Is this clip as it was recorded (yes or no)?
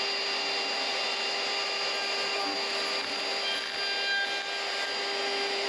yes